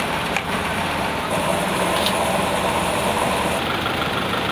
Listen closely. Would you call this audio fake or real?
fake